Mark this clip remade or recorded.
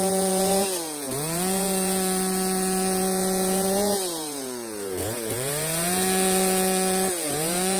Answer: remade